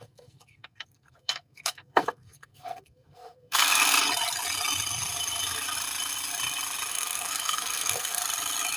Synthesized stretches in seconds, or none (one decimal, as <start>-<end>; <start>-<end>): 0.0-3.8; 6.9-8.2